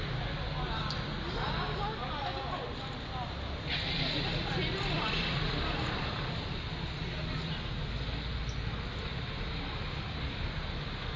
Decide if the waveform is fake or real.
real